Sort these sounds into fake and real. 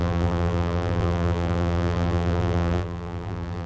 fake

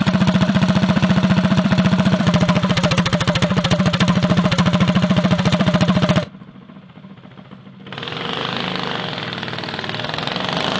real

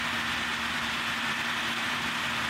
fake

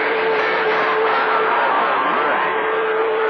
fake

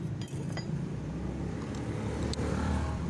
fake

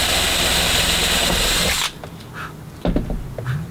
real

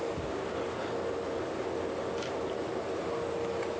fake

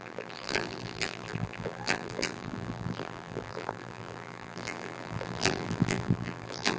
fake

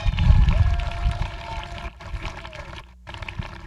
fake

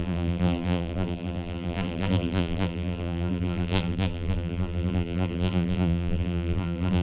fake